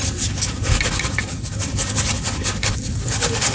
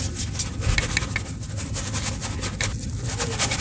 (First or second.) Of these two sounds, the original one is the second